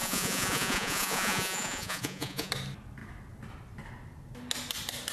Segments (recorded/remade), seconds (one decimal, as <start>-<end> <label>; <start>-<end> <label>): 0.0-2.5 remade; 2.5-5.1 recorded